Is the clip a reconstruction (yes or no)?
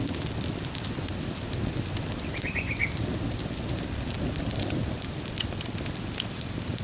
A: yes